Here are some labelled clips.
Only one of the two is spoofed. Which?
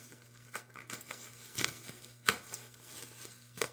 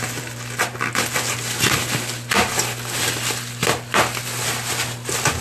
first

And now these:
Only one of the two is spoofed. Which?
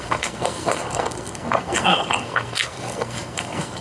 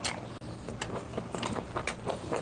first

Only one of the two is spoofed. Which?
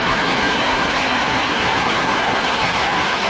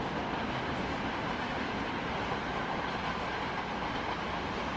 first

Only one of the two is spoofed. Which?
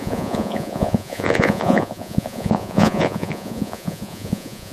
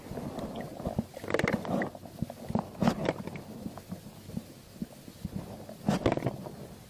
first